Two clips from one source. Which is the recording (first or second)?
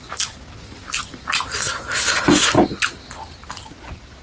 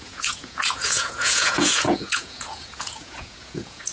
first